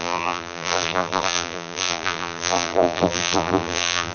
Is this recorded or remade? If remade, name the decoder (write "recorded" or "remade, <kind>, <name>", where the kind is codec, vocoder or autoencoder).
remade, vocoder, BigVGAN v2